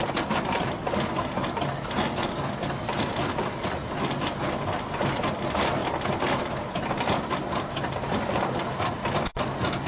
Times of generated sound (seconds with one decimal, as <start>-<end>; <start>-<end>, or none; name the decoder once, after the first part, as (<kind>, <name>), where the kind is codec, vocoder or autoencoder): none